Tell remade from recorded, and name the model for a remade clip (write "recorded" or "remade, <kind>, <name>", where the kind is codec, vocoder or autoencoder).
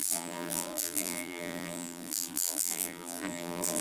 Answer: remade, vocoder, BigVGAN v2